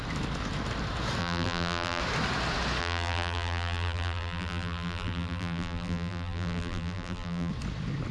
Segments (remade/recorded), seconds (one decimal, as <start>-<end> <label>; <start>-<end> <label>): 0.0-1.2 recorded; 1.2-2.0 remade; 2.0-2.8 recorded; 2.8-7.5 remade; 7.5-8.1 recorded